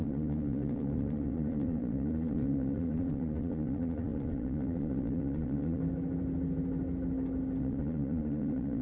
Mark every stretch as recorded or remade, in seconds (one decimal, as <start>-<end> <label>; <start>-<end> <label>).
0.0-5.8 remade; 5.8-7.6 recorded; 7.6-8.8 remade